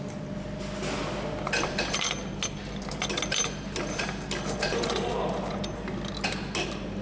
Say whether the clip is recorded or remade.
recorded